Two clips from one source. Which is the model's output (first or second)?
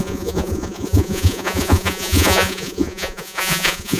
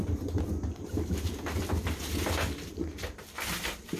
first